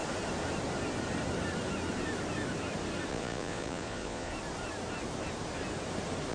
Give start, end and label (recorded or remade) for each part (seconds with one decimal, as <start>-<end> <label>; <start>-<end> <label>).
0.0-3.1 recorded; 3.1-4.3 remade; 4.3-6.3 recorded